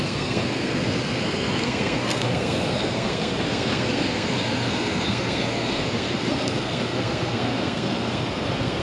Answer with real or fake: fake